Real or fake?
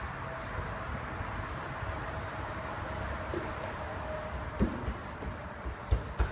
real